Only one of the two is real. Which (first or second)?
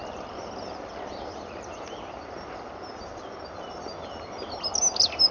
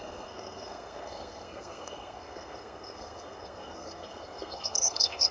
first